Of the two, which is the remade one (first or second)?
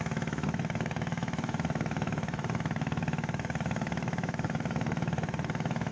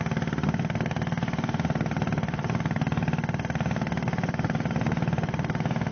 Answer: first